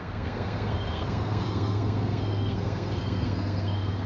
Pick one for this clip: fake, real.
fake